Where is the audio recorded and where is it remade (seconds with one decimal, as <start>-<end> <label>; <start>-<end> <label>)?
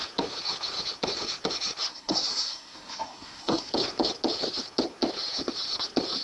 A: 0.0-1.9 recorded; 1.9-3.7 remade; 3.7-6.2 recorded